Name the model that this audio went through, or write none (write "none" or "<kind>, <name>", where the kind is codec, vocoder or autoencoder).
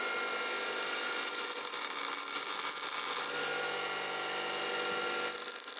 none